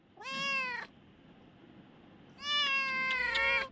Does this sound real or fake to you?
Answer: real